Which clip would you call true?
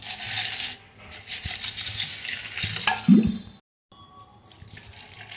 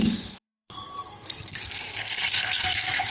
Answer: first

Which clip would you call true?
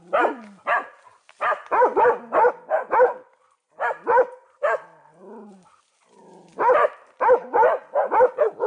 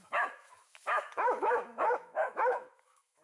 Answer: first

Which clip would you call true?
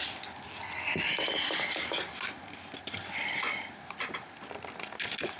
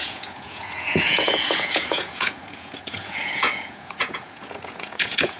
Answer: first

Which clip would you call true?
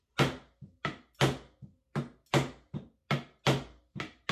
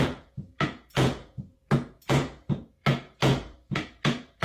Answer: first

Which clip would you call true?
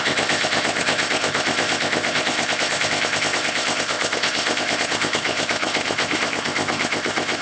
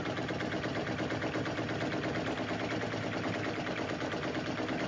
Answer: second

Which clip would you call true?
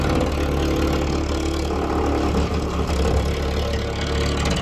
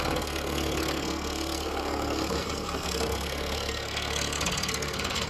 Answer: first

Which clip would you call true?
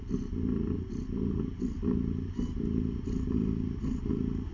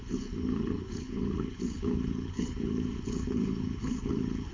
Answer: first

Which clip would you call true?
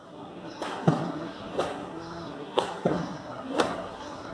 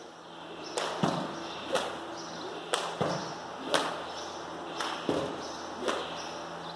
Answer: second